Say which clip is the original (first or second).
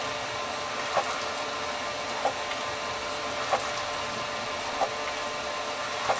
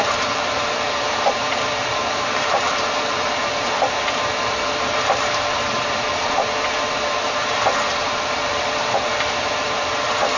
first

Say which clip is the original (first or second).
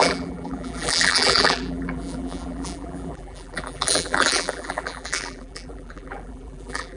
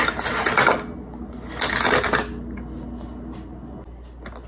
second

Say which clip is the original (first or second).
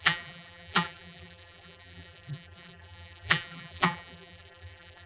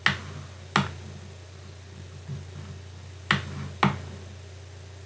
second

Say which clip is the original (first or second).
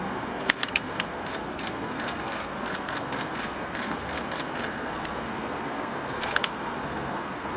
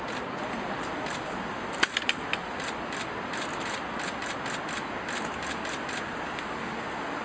second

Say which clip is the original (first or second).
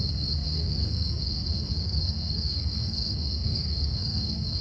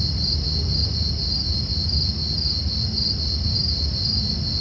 second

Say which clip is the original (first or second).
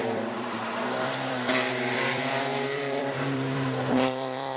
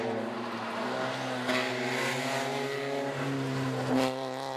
second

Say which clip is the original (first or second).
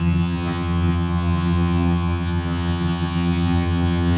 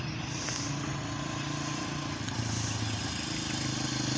second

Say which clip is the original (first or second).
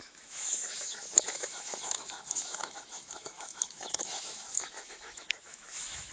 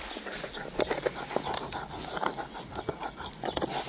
second